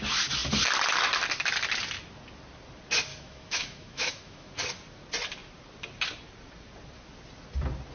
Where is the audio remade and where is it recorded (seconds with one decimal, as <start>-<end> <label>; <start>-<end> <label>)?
0.0-3.1 recorded; 3.1-4.5 remade; 4.5-7.9 recorded